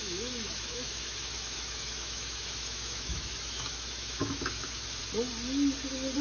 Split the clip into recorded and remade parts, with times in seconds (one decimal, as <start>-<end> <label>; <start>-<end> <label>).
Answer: 0.0-5.0 remade; 5.0-6.2 recorded